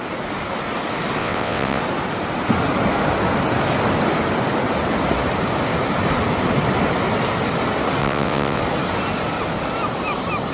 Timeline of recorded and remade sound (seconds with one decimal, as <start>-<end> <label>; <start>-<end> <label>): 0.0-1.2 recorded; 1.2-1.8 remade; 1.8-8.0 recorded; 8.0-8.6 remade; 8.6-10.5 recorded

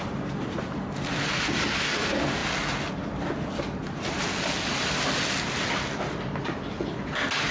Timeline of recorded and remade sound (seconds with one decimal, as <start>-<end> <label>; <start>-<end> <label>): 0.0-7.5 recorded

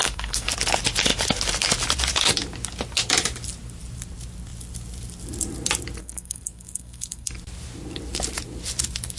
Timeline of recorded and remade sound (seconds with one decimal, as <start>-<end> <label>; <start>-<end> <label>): 0.0-0.5 remade; 0.5-6.0 recorded; 6.0-7.3 remade; 7.3-9.2 recorded

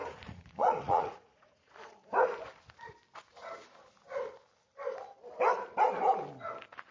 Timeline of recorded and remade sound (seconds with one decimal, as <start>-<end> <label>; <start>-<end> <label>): 0.0-1.7 remade; 1.7-6.9 recorded

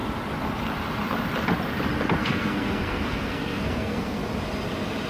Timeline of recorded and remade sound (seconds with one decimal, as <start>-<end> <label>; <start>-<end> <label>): 0.0-2.2 recorded; 2.2-4.2 remade; 4.2-5.1 recorded